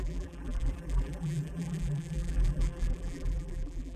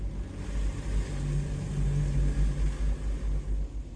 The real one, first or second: second